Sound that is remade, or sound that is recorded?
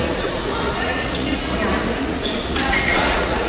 remade